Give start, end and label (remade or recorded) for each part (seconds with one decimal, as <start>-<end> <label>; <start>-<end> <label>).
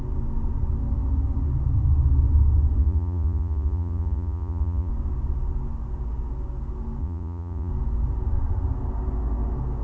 0.0-2.8 recorded; 2.8-4.9 remade; 4.9-7.0 recorded; 7.0-7.7 remade; 7.7-9.8 recorded